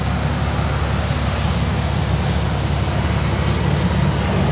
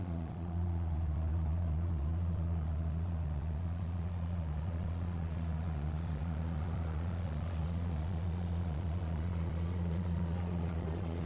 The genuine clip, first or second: first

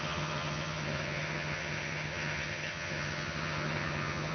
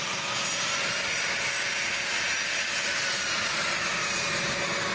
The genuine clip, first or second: second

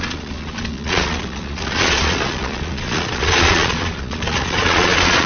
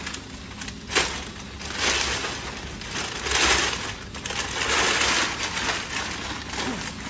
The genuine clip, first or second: second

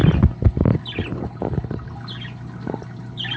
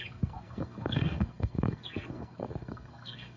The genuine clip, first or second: first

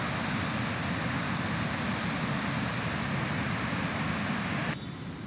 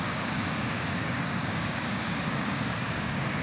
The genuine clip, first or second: first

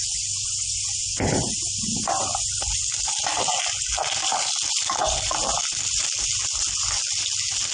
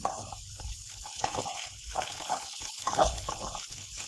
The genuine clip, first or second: first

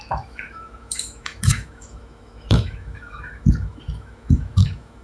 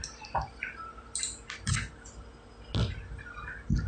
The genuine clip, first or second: second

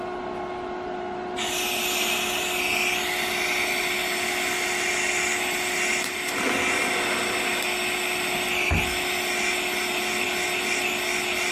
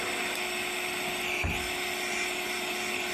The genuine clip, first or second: first